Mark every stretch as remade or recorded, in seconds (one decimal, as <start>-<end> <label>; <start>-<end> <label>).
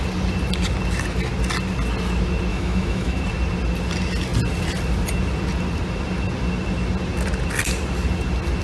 0.0-2.5 recorded; 2.5-3.2 remade; 3.2-8.6 recorded